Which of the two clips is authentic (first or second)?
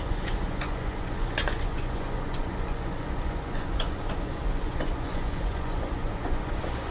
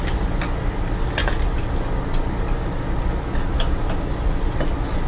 second